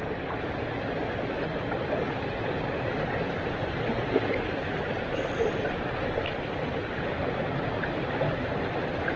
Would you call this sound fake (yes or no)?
no